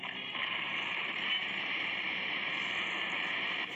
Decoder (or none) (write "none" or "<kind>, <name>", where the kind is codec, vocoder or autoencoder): vocoder, BigVGAN v2